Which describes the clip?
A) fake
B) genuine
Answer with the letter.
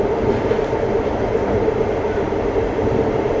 B